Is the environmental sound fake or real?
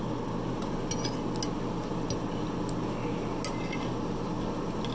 real